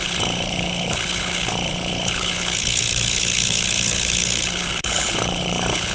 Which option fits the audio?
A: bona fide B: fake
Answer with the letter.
B